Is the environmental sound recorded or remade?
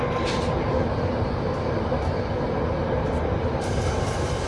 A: recorded